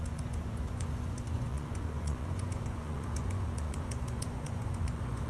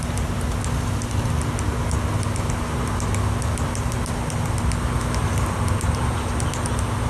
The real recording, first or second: second